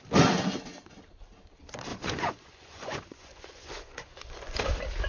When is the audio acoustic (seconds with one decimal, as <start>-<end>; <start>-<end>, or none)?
0.0-1.9; 4.6-5.1